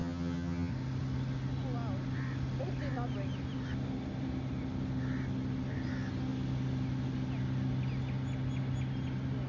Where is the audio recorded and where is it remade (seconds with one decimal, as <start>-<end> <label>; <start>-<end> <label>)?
0.0-0.7 remade; 0.7-9.5 recorded